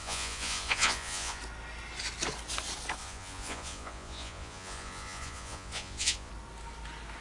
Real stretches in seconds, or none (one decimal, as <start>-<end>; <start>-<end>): 1.4-3.0; 6.3-7.2